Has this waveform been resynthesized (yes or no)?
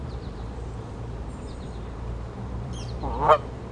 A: yes